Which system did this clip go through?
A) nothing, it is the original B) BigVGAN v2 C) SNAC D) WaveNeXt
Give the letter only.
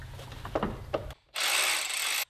A